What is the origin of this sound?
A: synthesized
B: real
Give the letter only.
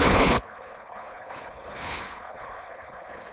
A